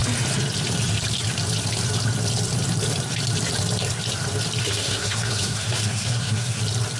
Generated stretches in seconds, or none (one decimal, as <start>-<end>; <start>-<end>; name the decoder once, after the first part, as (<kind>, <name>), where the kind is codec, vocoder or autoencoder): 4.6-6.6 (codec, SNAC)